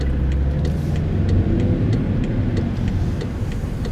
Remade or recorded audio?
recorded